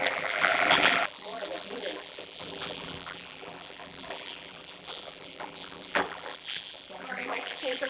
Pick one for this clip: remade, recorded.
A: remade